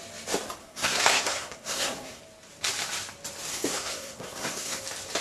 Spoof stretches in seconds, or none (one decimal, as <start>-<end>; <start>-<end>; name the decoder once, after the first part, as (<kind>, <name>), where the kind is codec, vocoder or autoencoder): 0.6-2.2 (codec, SNAC); 3.5-4.8